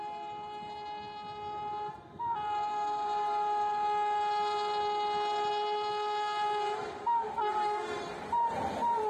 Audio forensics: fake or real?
real